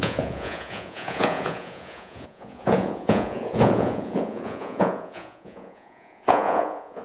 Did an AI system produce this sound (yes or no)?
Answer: yes